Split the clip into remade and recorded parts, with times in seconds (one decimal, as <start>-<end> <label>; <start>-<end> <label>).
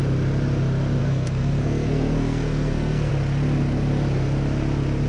0.0-1.0 recorded; 1.0-3.1 remade; 3.1-5.1 recorded